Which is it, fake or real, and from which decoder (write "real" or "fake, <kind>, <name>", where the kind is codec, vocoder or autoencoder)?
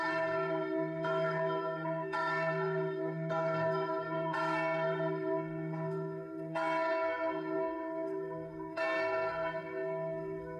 fake, codec, SNAC